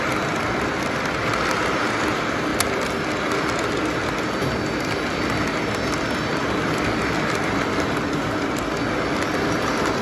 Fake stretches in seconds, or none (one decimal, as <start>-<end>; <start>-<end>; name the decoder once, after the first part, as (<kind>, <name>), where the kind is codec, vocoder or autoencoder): none